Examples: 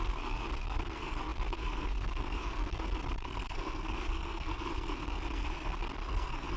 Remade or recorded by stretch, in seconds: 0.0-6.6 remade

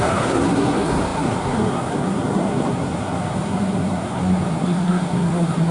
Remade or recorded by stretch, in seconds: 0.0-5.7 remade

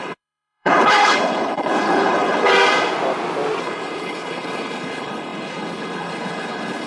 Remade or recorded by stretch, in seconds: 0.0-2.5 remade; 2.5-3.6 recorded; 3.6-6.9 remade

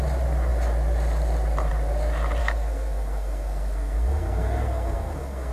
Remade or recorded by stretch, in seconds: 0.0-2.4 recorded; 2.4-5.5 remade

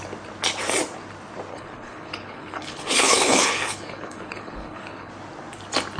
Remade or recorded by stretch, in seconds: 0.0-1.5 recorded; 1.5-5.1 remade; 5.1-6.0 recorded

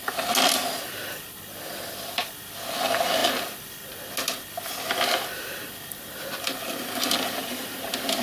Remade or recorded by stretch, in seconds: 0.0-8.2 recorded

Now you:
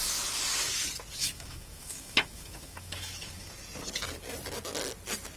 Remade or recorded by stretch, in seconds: 0.0-1.2 recorded; 1.2-3.5 remade; 3.5-5.4 recorded

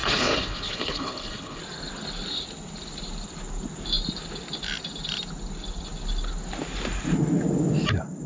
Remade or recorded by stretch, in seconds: 0.0-1.6 remade; 1.6-8.3 recorded